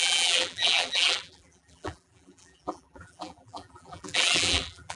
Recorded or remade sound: remade